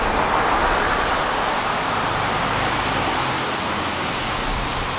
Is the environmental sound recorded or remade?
recorded